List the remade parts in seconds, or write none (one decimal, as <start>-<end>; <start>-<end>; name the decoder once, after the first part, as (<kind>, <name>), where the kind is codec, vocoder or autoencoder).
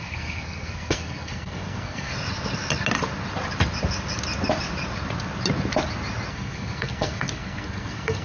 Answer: 0.0-2.1 (codec, SNAC); 6.3-8.2